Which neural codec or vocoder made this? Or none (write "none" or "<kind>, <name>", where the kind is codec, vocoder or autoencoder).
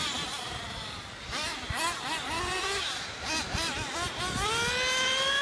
none